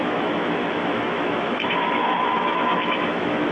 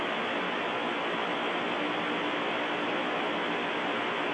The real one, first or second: second